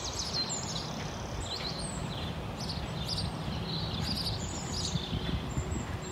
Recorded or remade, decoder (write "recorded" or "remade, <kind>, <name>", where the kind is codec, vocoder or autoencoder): recorded